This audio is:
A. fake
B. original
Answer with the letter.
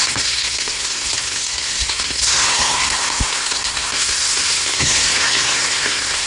A